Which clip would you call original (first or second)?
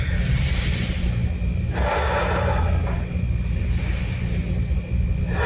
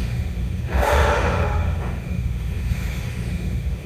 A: first